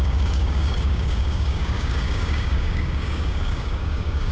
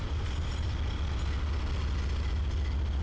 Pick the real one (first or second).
second